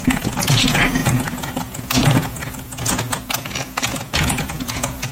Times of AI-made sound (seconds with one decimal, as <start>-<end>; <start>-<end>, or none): 0.0-5.1